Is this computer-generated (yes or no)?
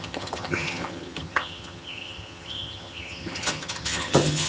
yes